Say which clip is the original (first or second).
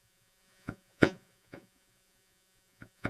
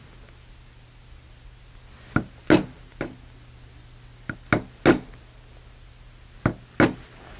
second